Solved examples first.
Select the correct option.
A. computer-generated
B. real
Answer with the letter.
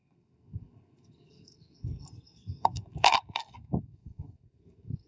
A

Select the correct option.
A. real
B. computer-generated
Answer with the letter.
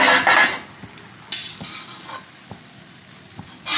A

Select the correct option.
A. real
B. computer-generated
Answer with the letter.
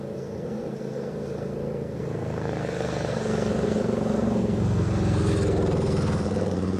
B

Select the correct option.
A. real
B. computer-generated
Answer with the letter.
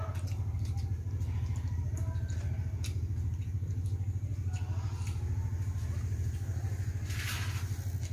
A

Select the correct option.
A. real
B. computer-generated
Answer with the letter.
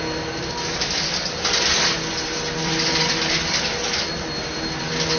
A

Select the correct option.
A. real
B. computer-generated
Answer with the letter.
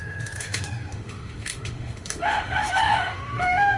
B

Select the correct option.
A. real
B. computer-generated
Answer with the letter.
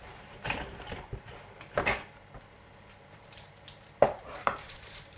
B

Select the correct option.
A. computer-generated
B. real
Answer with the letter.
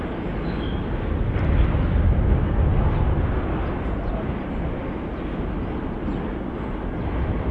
B